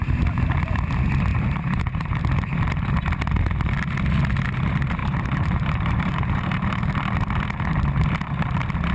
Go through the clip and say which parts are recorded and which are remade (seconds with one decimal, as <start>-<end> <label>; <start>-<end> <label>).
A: 0.0-1.3 recorded; 1.3-2.2 remade; 2.2-5.0 recorded; 5.0-6.9 remade; 6.9-8.9 recorded